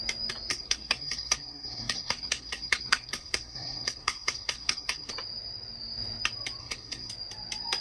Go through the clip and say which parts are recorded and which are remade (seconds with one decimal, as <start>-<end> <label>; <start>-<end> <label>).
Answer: 0.0-0.5 recorded; 0.5-5.1 remade; 5.1-6.6 recorded; 6.6-7.1 remade; 7.1-7.8 recorded